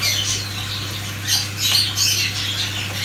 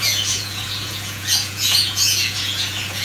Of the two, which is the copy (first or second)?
second